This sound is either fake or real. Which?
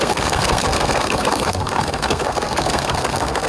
fake